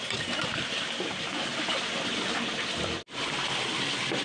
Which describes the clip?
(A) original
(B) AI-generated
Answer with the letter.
A